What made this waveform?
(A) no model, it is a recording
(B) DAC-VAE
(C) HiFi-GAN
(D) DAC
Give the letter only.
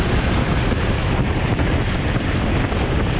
A